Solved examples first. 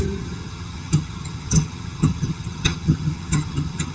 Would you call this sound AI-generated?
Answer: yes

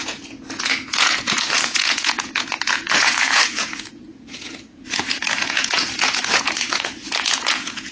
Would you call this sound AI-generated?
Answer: yes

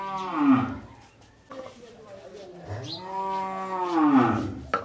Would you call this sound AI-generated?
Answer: no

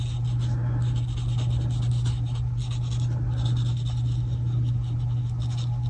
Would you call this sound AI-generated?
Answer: no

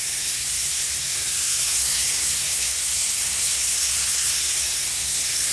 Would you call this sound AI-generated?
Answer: yes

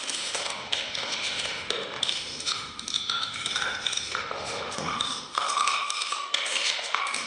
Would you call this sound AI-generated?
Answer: yes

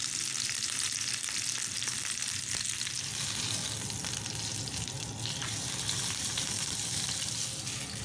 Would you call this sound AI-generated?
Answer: no